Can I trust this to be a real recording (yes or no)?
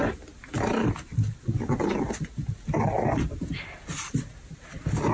yes